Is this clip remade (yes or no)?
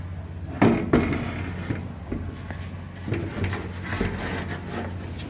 no